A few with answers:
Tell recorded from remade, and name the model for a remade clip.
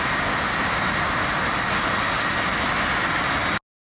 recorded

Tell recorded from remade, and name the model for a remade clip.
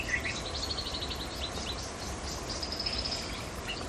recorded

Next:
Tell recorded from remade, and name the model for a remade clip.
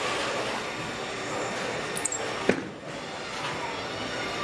recorded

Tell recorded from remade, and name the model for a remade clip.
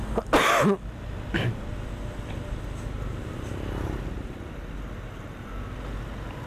recorded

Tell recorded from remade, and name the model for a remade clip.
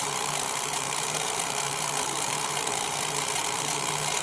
remade, vocoder, BigVGAN v2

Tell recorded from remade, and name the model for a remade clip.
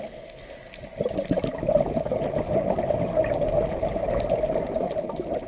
recorded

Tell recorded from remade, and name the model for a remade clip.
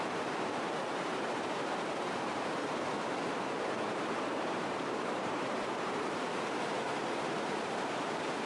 remade, vocoder, BigVGAN v2